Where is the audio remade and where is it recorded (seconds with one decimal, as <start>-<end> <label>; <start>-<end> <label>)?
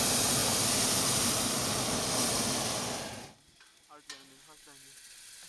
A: 0.0-5.5 recorded